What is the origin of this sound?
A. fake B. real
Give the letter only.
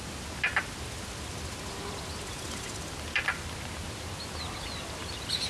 B